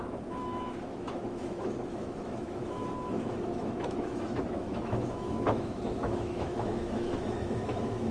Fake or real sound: fake